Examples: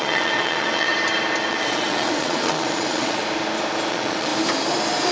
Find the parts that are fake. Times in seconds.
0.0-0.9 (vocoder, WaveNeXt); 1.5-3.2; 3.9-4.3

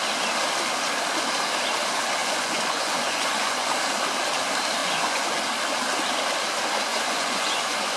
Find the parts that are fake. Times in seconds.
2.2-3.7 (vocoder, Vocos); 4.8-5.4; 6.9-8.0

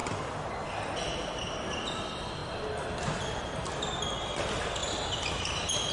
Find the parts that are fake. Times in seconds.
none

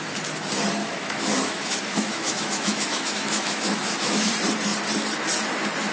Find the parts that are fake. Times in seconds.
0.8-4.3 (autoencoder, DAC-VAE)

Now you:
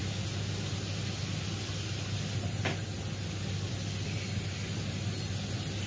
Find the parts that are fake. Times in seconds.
none

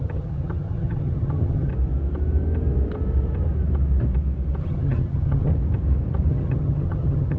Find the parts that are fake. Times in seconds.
0.0-1.7 (vocoder, HiFi-GAN); 4.6-5.5; 6.3-7.4

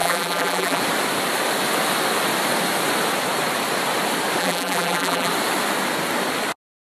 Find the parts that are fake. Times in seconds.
0.0-0.8 (vocoder, BigVGAN v2); 4.4-5.3

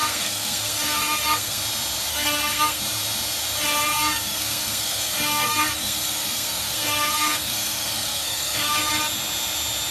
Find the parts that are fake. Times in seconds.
0.0-1.6 (codec, SNAC); 2.1-2.8; 3.9-8.9